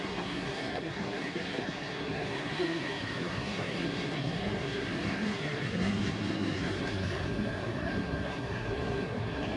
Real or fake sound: fake